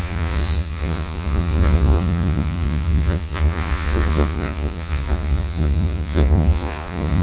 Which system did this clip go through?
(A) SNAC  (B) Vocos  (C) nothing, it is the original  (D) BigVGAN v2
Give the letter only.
B